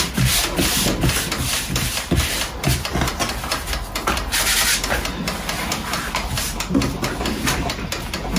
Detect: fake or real real